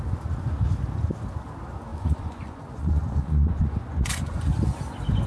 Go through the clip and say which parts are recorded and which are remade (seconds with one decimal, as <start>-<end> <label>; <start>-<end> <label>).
0.0-1.9 recorded; 1.9-4.5 remade; 4.5-5.3 recorded